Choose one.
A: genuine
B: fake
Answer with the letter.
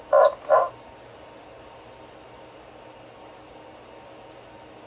A